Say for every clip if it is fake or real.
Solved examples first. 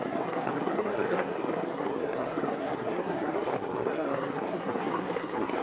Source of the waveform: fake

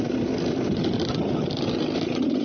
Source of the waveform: real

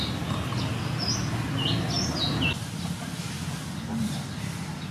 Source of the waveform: real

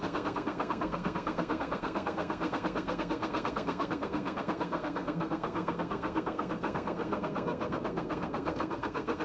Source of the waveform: fake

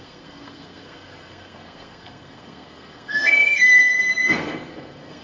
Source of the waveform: fake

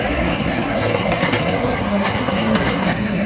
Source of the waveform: fake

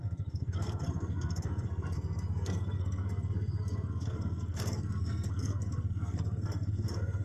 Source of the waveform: fake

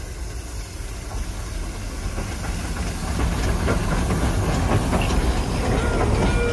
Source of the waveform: real